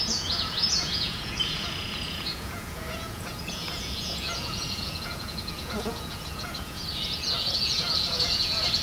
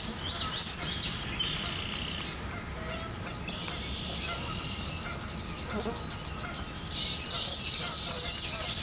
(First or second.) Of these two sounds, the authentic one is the second